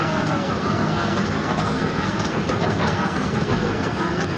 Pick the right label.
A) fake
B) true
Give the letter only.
A